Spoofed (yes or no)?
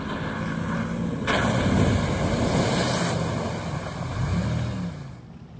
no